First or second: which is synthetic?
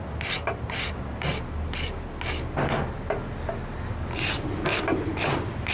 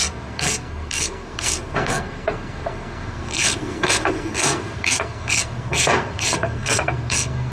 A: second